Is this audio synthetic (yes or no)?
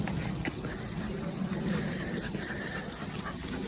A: no